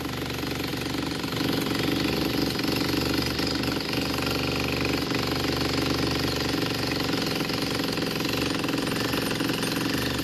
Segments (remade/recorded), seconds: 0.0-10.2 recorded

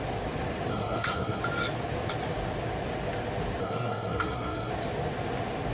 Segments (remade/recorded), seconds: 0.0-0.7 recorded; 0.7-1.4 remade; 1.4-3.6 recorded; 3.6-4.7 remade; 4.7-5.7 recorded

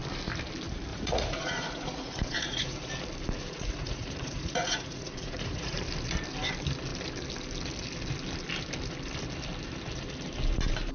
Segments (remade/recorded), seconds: 0.0-0.9 recorded; 0.9-2.9 remade; 2.9-3.4 recorded; 3.4-5.8 remade; 5.8-10.9 recorded

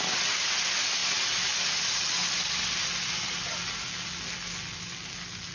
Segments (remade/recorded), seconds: 0.0-5.5 recorded

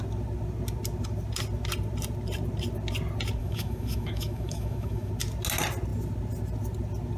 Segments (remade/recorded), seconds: 0.0-3.4 recorded; 3.4-5.1 remade; 5.1-7.2 recorded

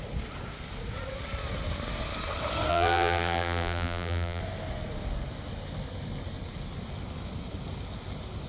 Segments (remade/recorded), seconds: 0.0-2.7 recorded; 2.7-4.4 remade; 4.4-8.5 recorded

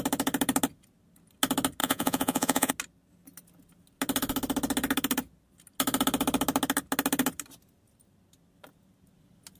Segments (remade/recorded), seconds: 0.0-1.8 recorded; 1.8-2.7 remade; 2.7-9.6 recorded

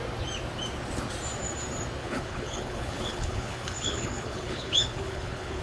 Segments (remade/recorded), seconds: 0.0-2.0 recorded; 2.0-5.6 remade